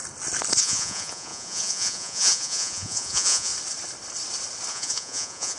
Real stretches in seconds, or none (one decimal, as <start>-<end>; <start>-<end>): 0.0-0.6; 3.5-4.7

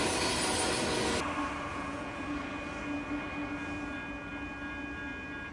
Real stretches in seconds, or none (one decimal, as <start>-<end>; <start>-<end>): 0.0-1.7; 2.2-5.5

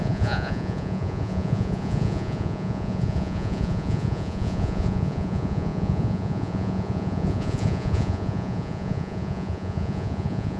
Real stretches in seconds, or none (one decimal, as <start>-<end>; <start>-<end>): none

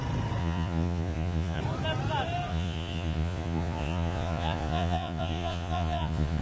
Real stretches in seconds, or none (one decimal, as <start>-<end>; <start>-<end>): 0.0-0.4; 1.6-2.5

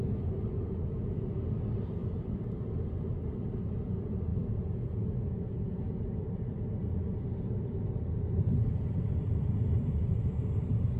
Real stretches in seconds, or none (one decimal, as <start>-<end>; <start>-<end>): 0.0-0.5; 1.3-4.3; 5.8-11.0

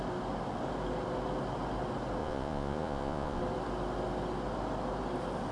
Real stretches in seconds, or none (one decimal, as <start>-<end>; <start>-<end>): 0.0-2.2; 3.4-5.5

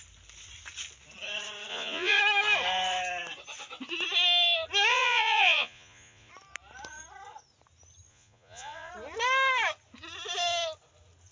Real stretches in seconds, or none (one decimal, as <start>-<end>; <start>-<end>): 0.0-1.7; 2.2-4.9; 6.3-8.1; 8.9-11.3